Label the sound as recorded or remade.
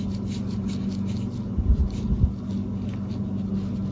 recorded